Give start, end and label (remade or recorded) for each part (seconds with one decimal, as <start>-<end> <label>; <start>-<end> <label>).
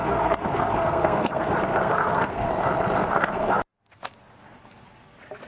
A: 0.0-2.5 remade; 2.5-3.0 recorded; 3.0-3.6 remade; 3.6-5.5 recorded